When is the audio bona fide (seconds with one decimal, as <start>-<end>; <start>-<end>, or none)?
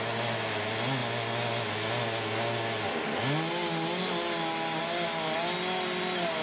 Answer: 0.0-6.4